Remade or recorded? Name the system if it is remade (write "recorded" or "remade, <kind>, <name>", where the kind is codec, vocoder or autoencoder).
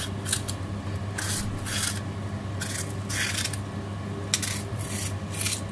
recorded